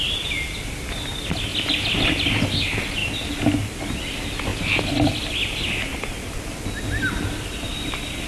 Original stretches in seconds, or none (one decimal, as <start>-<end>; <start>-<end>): 0.0-1.5; 2.1-5.9; 6.4-8.3